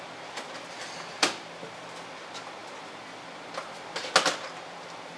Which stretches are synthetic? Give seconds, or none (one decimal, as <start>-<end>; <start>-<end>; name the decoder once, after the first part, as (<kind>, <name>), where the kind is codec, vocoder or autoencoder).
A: none